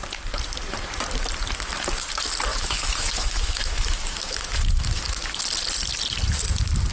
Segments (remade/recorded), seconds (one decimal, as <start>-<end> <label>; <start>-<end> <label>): 0.0-2.5 recorded; 2.5-5.4 remade; 5.4-6.9 recorded